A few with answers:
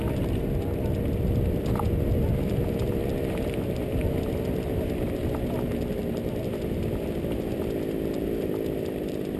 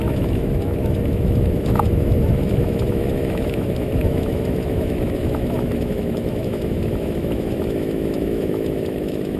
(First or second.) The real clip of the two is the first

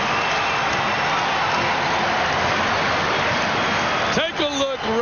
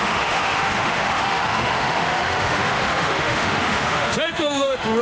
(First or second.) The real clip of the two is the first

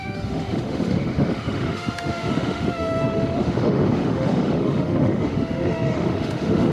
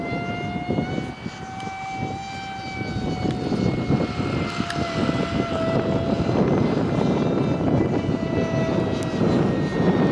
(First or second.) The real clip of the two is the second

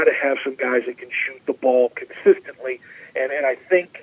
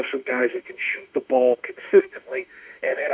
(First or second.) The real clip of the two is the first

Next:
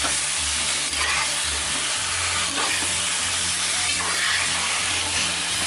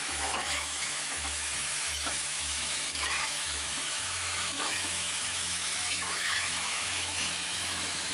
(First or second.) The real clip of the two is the first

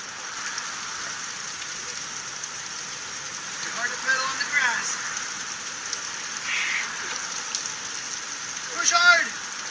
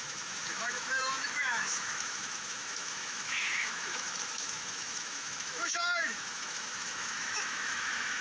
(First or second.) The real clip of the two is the first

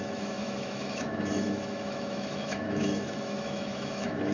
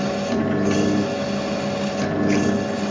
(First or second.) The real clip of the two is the second